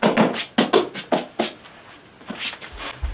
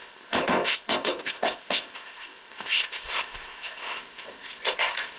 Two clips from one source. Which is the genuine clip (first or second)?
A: first